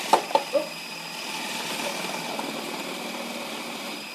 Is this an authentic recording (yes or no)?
yes